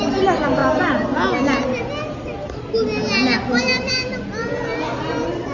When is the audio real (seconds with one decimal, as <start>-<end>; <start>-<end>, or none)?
0.0-5.5